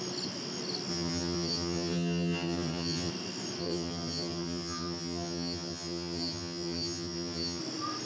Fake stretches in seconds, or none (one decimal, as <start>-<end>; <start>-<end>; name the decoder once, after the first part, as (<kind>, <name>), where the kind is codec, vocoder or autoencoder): 0.9-3.1 (vocoder, HiFi-GAN); 3.6-7.6